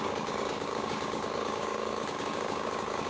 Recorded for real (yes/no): no